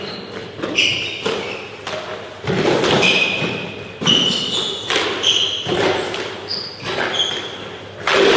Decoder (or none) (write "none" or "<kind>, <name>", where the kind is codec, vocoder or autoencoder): none